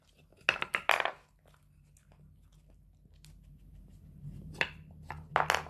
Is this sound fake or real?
real